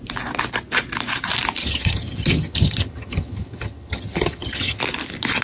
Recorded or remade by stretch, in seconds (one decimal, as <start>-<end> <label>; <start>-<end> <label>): 0.0-1.6 recorded; 1.6-4.8 remade; 4.8-5.4 recorded